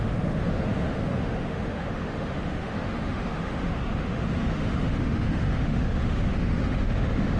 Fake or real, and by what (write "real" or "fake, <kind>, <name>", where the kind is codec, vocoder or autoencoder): fake, autoencoder, DAC-VAE